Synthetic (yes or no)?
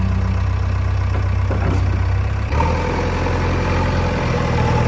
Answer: no